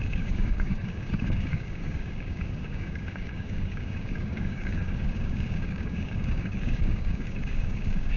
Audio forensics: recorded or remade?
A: remade